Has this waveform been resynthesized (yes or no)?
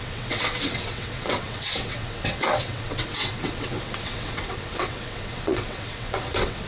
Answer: yes